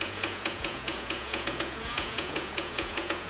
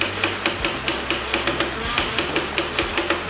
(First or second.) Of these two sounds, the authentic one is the second